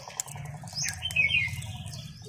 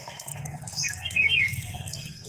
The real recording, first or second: first